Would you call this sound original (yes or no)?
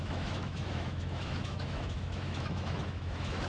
no